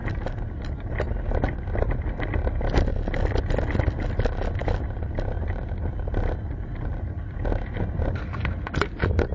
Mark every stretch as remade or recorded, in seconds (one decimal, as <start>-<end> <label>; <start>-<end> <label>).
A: 0.0-9.3 recorded